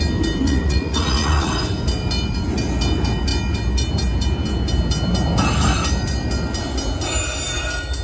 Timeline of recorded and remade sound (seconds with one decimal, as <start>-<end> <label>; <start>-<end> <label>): 0.0-0.4 recorded; 0.4-1.5 remade; 1.5-8.0 recorded